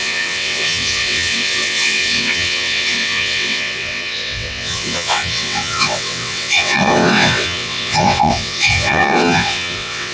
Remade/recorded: remade